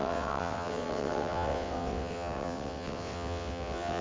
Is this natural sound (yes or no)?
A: no